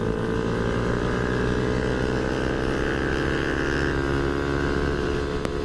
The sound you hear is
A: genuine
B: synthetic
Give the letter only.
A